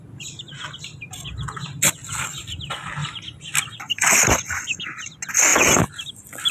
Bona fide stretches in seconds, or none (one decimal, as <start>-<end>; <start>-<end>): 0.0-6.5